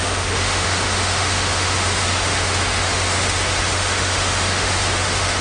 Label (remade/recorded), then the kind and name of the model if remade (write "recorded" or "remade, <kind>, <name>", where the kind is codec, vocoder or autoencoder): remade, autoencoder, DAC-VAE